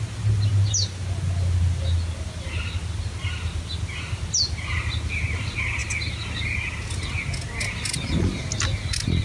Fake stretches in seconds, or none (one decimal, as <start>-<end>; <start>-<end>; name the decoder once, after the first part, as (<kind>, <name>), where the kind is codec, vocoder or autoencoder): none